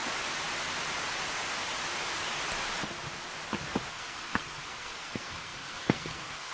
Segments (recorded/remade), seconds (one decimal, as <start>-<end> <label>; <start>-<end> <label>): 0.0-3.9 recorded; 3.9-6.5 remade